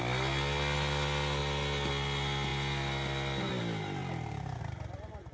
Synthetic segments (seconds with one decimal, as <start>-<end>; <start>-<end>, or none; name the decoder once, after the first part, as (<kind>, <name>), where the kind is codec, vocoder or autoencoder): none